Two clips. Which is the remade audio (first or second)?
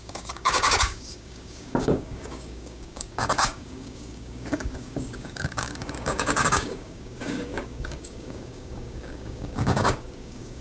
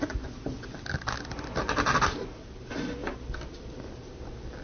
first